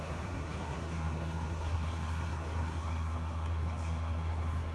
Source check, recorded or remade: remade